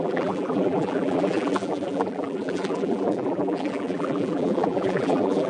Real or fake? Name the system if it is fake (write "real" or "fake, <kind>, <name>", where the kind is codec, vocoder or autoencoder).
fake, vocoder, BigVGAN v2